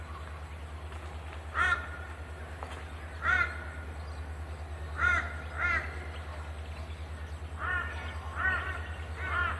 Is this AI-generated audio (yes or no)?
no